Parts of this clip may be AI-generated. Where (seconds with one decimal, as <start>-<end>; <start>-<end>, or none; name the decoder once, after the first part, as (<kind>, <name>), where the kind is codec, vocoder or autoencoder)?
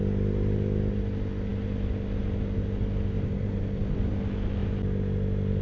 none